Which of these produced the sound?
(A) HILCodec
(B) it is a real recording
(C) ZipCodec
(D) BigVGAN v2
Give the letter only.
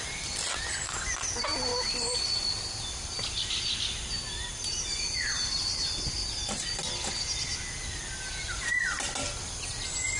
B